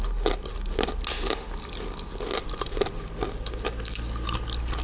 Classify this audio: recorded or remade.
recorded